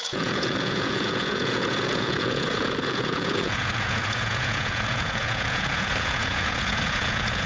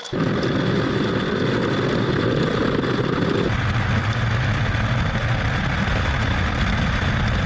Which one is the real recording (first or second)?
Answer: second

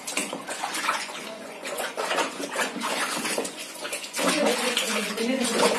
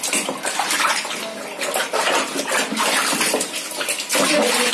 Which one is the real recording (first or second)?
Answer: second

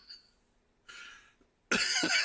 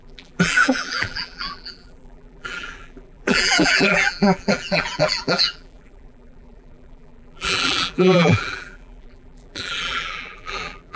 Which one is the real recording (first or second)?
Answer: first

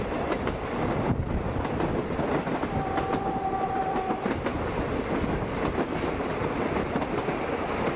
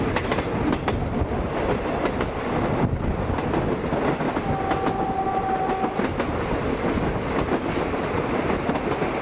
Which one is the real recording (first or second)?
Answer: second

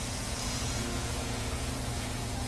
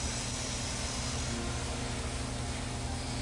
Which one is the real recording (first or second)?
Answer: second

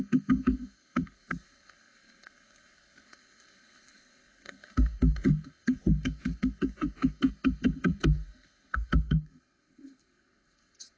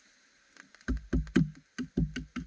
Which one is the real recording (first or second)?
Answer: second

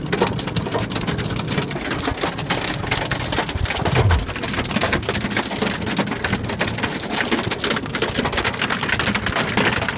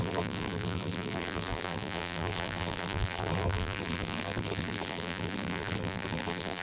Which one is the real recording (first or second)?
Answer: first